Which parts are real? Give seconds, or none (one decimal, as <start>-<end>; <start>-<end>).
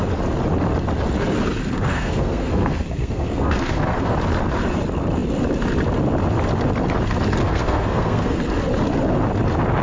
0.0-1.6; 4.1-7.4; 8.4-9.8